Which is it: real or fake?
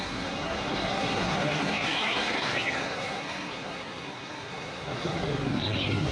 fake